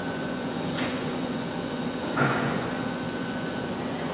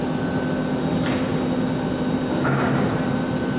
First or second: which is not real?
first